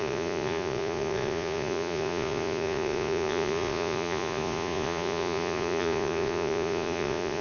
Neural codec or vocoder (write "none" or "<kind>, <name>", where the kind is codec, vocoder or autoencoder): vocoder, Vocos